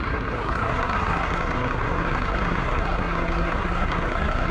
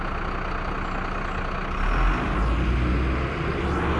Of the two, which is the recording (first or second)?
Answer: second